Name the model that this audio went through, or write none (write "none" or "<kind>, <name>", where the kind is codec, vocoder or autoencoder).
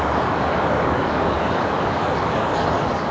codec, DAC